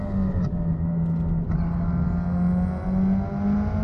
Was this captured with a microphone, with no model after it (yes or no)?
yes